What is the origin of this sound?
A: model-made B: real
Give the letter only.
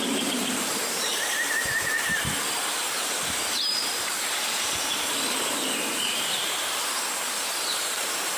A